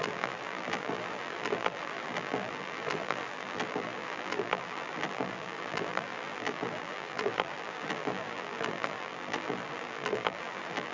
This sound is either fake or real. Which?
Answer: fake